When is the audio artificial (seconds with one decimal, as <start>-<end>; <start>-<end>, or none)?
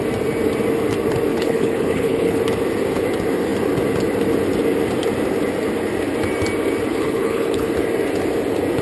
1.3-2.4; 6.9-7.7